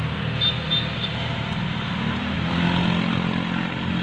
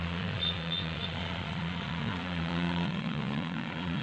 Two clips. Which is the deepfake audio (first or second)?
second